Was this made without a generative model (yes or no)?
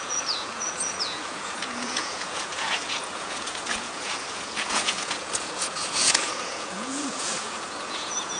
no